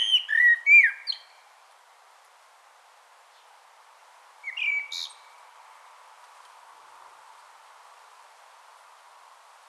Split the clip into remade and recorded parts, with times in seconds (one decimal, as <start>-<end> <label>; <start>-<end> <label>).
0.0-9.7 recorded